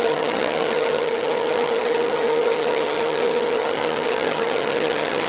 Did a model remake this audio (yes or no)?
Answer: yes